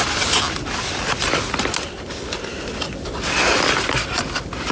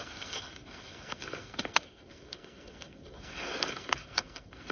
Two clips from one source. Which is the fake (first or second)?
second